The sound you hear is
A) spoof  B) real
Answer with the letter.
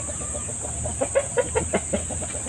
B